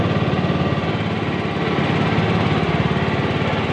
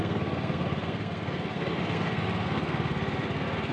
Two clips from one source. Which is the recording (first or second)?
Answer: first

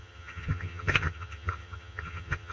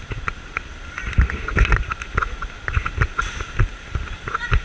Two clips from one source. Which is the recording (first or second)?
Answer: second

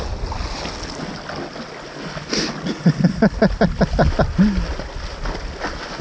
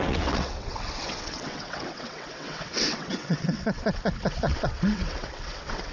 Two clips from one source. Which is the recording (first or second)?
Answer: first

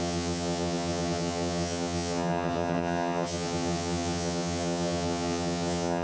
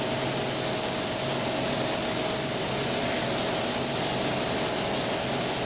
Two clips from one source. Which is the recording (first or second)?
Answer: second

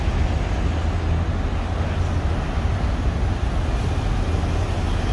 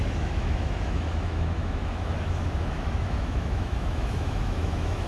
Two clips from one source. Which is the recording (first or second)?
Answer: first